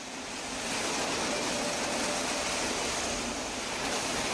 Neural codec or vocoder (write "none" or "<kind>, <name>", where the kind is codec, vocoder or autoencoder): none